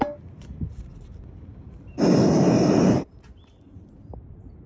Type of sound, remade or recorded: recorded